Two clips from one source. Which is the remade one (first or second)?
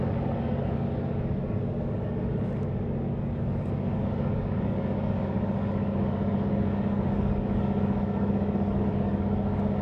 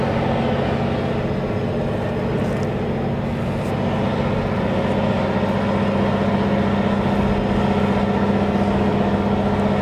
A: first